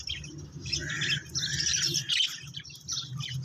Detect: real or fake real